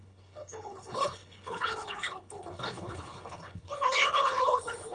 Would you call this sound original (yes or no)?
no